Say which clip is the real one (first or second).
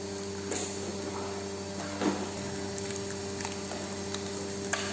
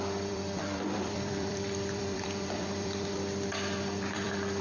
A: first